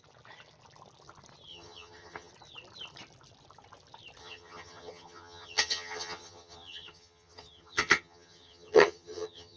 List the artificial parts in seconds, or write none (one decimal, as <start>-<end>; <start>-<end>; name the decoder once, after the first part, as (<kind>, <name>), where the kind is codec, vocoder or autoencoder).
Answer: 1.5-2.3 (vocoder, HiFi-GAN); 4.2-9.6